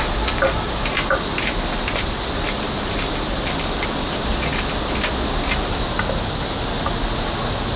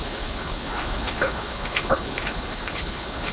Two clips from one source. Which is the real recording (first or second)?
first